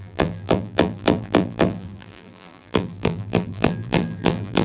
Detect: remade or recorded remade